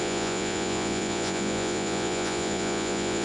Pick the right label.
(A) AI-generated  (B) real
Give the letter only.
A